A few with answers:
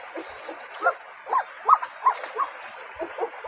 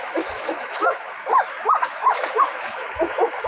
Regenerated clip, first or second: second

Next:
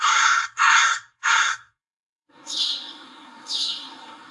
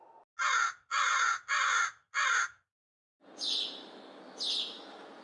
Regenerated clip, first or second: first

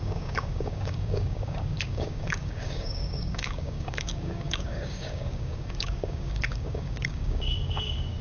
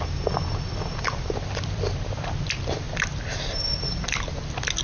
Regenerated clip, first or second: first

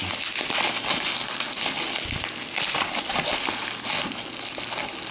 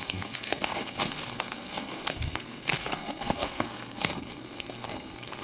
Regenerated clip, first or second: second